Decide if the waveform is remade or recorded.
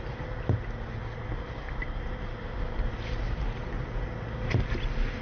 recorded